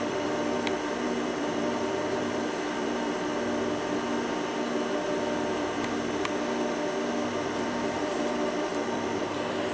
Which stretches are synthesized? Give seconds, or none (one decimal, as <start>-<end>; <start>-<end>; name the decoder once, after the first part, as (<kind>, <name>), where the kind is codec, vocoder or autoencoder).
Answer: 0.0-3.3 (vocoder, BigVGAN v2); 7.6-9.7